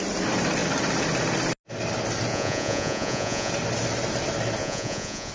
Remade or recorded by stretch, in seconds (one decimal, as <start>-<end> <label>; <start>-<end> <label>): 0.0-2.3 recorded; 2.3-3.5 remade; 3.5-4.6 recorded; 4.6-5.3 remade